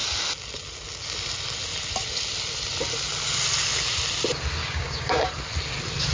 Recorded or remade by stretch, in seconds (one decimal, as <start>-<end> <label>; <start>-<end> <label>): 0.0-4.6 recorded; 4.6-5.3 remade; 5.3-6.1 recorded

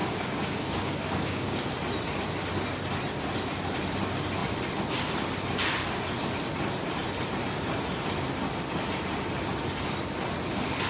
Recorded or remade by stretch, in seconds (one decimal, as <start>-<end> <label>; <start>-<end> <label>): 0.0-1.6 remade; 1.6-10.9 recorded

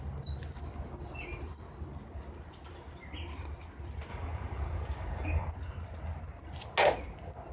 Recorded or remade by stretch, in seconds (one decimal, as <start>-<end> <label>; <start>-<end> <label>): 0.0-4.1 recorded; 4.1-5.5 remade; 5.5-7.5 recorded

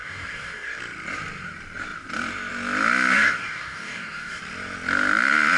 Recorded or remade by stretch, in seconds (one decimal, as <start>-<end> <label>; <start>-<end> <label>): 0.0-0.8 remade; 0.8-3.1 recorded; 3.1-4.4 remade; 4.4-5.6 recorded

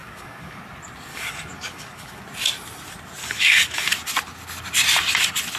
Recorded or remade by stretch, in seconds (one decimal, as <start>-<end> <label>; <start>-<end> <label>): 0.0-0.6 remade; 0.6-1.1 recorded; 1.1-2.2 remade; 2.2-3.2 recorded; 3.2-3.9 remade; 3.9-5.6 recorded